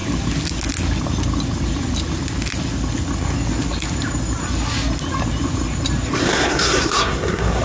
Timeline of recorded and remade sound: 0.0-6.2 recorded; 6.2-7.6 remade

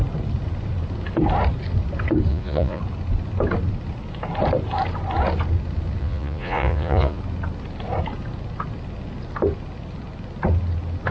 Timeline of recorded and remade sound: 0.0-2.3 recorded; 2.3-2.8 remade; 2.8-6.0 recorded; 6.0-7.2 remade; 7.2-11.1 recorded

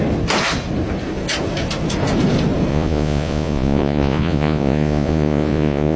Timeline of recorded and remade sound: 0.0-2.7 recorded; 2.7-6.0 remade

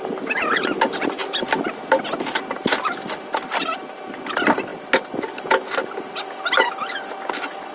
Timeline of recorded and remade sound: 0.0-7.7 recorded

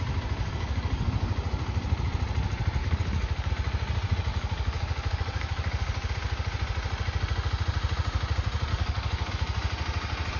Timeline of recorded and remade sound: 0.0-0.4 recorded; 0.4-1.1 remade; 1.1-2.8 recorded; 2.8-3.5 remade; 3.5-4.3 recorded; 4.3-6.1 remade; 6.1-8.7 recorded; 8.7-9.3 remade; 9.3-10.4 recorded

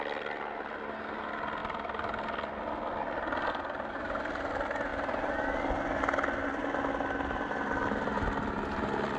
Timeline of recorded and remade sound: 0.0-9.2 recorded

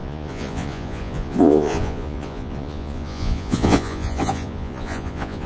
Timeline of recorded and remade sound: 0.0-5.5 remade

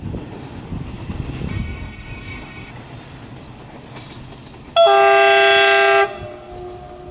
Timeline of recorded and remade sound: 0.0-1.5 recorded; 1.5-2.7 remade; 2.7-7.1 recorded